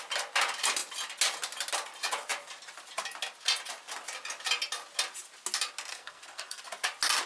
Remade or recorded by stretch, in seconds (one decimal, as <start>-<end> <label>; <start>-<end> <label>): 0.0-5.9 recorded; 5.9-6.6 remade; 6.6-7.3 recorded